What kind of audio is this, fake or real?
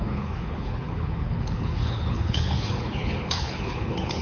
fake